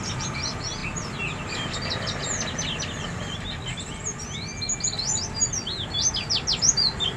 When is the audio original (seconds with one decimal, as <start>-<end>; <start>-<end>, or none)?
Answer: 0.0-7.2